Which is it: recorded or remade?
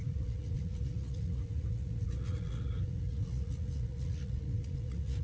remade